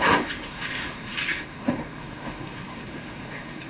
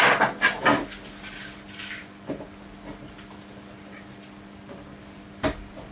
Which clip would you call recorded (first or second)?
second